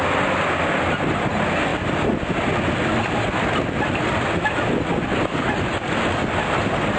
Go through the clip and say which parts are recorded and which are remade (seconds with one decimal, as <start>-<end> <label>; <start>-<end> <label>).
0.0-7.0 recorded